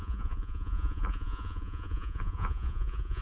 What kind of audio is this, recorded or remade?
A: remade